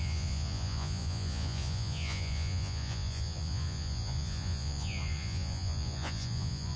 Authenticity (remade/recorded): remade